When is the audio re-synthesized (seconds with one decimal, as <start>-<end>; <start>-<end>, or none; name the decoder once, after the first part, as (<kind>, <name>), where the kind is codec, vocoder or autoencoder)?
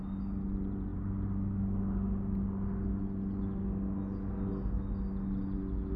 none